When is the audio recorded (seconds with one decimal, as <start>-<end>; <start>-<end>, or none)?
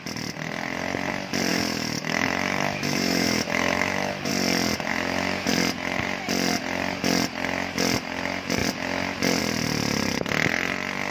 0.0-1.5; 4.3-4.9; 5.5-11.1